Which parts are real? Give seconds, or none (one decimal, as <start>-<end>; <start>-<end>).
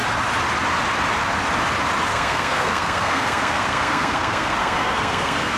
0.0-2.1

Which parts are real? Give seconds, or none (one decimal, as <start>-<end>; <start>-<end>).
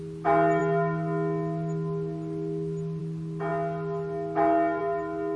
0.0-5.4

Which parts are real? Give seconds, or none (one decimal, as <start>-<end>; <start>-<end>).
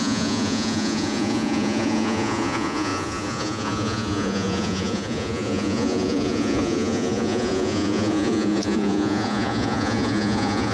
none